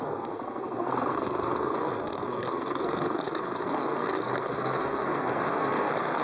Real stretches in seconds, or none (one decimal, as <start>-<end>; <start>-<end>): none